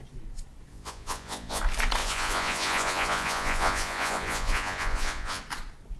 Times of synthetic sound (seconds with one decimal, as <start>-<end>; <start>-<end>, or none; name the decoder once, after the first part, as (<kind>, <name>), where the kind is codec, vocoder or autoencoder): 0.7-1.6 (vocoder, Vocos); 2.0-5.4